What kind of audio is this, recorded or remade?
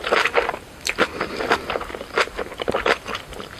recorded